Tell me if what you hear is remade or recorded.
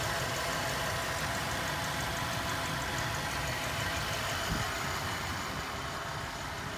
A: recorded